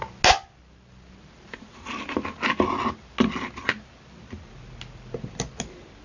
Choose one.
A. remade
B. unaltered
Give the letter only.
B